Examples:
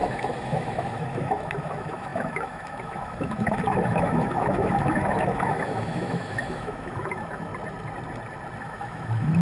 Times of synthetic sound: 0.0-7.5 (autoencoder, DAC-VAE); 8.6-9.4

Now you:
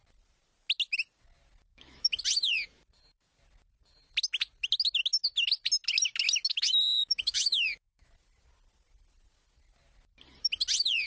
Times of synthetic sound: 1.7-2.2 (autoencoder, DAC-VAE); 6.5-8.1

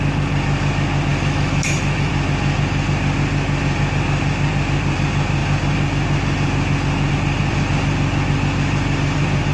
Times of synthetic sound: 1.1-2.1 (autoencoder, DAC-VAE)

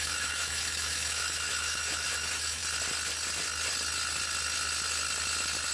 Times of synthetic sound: 0.0-2.6 (autoencoder, DAC-VAE)

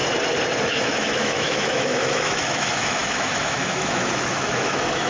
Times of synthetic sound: 0.6-5.1 (autoencoder, DAC-VAE)

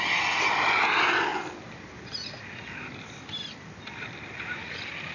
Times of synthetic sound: none

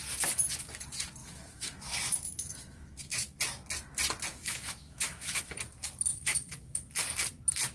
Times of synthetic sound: 1.2-3.4 (autoencoder, DAC-VAE); 4.3-5.4; 6.1-6.9